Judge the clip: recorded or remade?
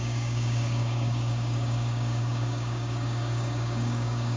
remade